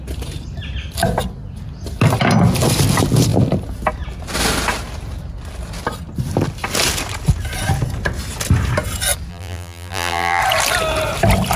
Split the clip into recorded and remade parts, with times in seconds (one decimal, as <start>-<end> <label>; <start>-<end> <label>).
0.0-9.3 recorded; 9.3-10.4 remade; 10.4-11.6 recorded